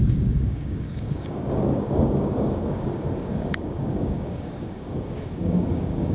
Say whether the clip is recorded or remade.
remade